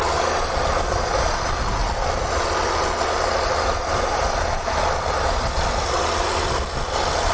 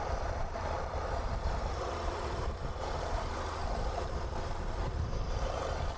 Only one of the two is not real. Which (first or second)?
second